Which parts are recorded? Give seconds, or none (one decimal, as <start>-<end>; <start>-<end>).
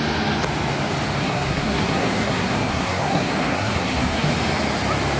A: 0.0-1.2; 4.3-5.2